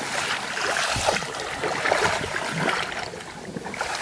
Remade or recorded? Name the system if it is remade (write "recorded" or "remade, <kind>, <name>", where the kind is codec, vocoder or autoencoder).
recorded